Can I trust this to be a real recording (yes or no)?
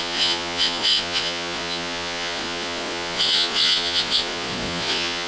no